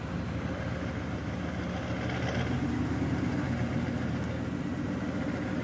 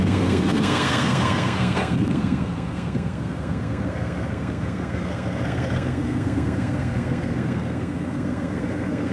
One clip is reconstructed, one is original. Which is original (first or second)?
first